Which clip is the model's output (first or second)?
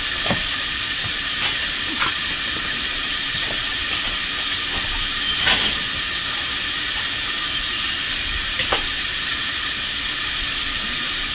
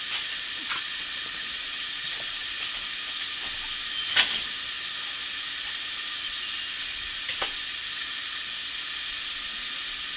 first